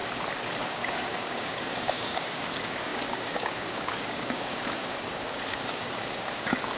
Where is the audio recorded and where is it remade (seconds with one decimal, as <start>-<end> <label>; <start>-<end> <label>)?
0.0-0.7 recorded; 0.7-6.8 remade